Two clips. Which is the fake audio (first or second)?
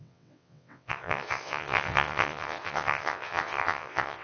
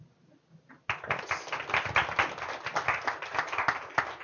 first